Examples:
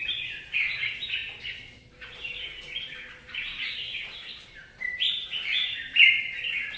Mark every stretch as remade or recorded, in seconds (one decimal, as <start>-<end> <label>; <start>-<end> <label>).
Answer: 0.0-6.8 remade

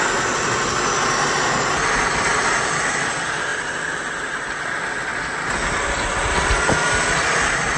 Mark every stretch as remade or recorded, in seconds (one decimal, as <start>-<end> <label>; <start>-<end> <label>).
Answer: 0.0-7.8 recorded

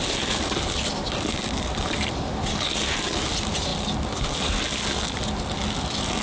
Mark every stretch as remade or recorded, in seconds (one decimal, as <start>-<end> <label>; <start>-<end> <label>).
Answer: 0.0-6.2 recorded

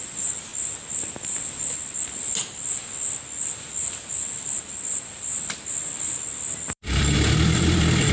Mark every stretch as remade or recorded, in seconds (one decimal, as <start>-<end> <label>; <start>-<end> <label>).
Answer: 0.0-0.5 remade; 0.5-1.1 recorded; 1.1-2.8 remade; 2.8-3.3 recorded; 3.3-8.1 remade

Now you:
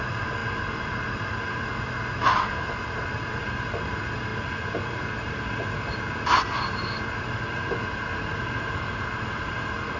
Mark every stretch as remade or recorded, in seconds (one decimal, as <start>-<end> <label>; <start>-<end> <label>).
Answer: 0.0-10.0 recorded

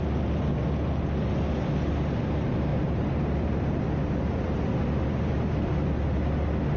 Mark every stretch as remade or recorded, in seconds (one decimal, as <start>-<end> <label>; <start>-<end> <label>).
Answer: 0.0-2.7 recorded; 2.7-6.8 remade

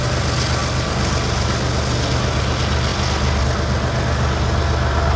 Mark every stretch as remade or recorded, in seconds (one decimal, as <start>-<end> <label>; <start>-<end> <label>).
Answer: 0.0-5.2 recorded

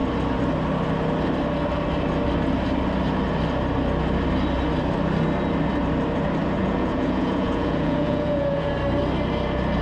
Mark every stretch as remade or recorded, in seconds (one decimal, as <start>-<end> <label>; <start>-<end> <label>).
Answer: 0.0-6.6 recorded; 6.6-8.7 remade; 8.7-9.8 recorded